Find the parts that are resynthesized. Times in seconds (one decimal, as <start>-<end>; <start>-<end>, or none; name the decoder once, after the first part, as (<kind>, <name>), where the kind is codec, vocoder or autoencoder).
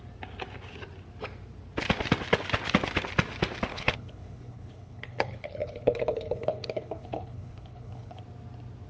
3.7-8.2 (codec, HILCodec)